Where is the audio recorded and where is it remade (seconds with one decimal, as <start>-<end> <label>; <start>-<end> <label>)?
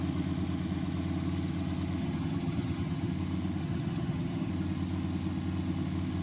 0.0-2.0 recorded; 2.0-3.1 remade; 3.1-3.6 recorded; 3.6-4.5 remade; 4.5-6.2 recorded